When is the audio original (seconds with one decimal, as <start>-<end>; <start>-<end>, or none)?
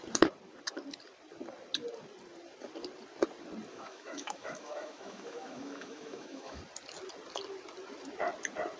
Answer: 0.0-3.7; 6.6-8.8